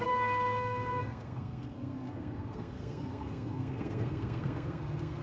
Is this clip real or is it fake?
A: fake